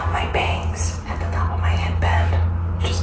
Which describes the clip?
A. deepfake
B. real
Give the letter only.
B